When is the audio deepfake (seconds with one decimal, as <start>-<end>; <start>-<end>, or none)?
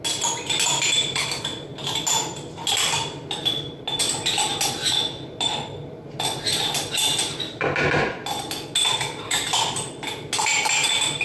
none